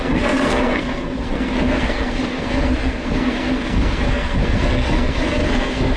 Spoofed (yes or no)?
yes